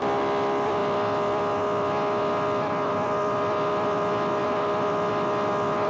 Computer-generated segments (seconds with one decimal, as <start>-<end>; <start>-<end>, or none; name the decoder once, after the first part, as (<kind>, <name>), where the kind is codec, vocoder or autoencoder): none